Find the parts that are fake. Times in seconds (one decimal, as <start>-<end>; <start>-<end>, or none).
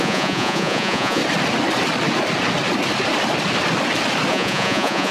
0.0-1.2; 4.3-5.1